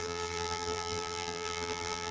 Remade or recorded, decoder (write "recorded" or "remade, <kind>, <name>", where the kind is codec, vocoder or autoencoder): remade, vocoder, BigVGAN v2